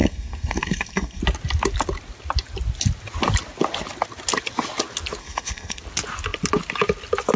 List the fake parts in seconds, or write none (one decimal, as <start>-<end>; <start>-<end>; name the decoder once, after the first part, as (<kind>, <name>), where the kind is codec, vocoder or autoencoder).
0.0-1.2 (codec, SNAC); 5.2-5.8